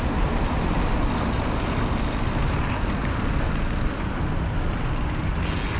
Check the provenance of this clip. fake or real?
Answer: real